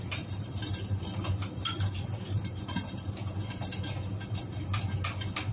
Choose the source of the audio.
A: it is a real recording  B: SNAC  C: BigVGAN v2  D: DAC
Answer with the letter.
A